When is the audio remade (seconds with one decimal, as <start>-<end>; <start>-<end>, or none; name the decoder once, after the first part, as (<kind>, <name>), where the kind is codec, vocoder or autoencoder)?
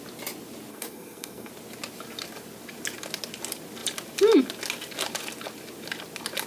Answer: 0.7-1.5 (codec, SNAC)